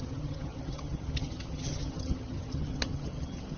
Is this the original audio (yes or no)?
no